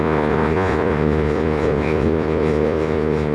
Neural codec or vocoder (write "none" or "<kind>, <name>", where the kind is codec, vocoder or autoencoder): vocoder, Vocos